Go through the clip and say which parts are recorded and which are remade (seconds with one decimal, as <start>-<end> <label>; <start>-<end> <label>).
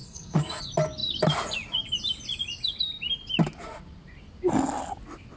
0.0-0.6 remade; 0.6-5.4 recorded